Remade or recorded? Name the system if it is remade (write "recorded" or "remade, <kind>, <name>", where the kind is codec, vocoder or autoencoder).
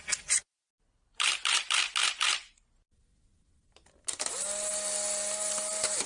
recorded